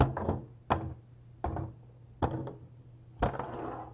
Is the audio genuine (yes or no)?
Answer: yes